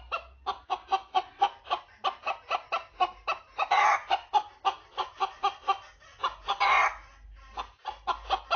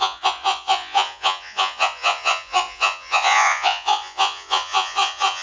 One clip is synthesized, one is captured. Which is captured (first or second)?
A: first